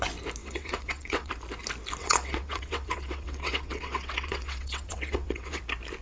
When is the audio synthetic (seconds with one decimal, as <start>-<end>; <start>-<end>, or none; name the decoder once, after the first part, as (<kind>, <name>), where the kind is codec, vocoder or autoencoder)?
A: 0.4-1.3 (vocoder, WaveNeXt); 2.0-5.6